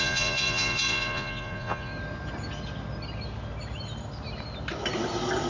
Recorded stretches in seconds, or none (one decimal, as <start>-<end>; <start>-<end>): 1.9-5.5